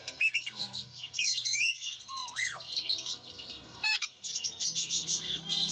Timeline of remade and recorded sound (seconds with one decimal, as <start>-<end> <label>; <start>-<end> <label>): 0.0-5.7 remade